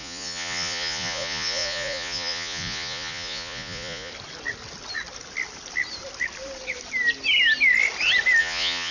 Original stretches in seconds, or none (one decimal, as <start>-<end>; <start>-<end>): 4.1-8.4